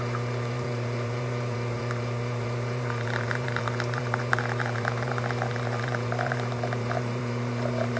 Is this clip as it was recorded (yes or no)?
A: no